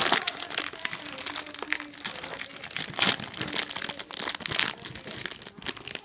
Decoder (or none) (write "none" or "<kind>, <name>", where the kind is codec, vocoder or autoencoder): none